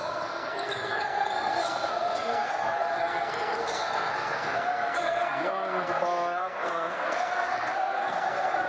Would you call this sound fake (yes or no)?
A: yes